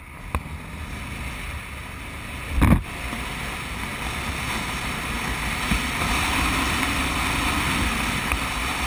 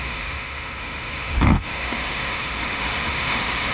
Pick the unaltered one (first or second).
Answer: first